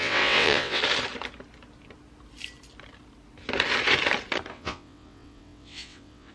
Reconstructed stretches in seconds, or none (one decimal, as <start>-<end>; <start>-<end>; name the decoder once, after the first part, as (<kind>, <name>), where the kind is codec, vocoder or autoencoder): 0.0-0.8 (vocoder, WaveNeXt); 4.5-6.3